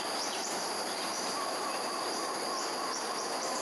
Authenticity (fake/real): fake